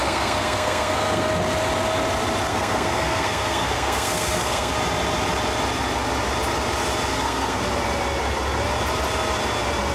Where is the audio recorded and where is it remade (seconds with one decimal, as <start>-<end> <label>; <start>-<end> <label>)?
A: 0.0-1.3 remade; 1.3-2.5 recorded; 2.5-4.7 remade; 4.7-7.1 recorded; 7.1-7.6 remade; 7.6-9.9 recorded